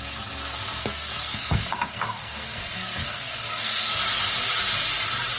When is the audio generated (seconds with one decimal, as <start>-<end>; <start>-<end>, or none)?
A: 0.8-4.0